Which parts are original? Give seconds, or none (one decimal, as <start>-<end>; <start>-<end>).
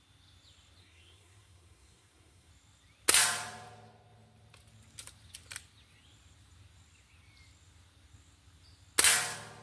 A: 0.0-0.8; 2.5-9.6